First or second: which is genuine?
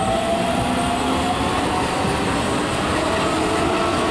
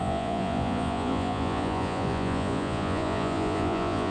first